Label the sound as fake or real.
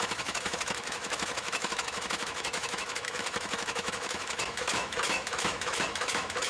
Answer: fake